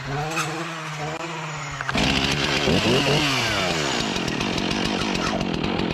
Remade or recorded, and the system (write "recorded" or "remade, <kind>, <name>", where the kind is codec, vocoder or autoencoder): recorded